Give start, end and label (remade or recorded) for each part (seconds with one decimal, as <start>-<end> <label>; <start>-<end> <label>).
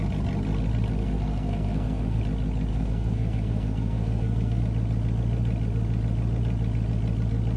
0.0-1.0 recorded; 1.0-2.2 remade; 2.2-2.7 recorded; 2.7-4.6 remade; 4.6-7.6 recorded